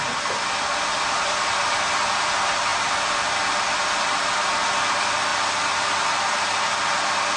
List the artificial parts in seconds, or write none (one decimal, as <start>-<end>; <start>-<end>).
2.7-4.2